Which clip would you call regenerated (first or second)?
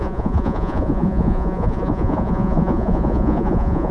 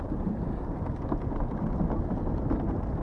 first